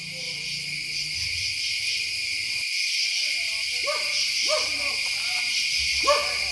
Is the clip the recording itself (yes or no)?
yes